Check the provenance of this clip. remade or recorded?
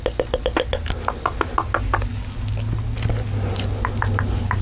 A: recorded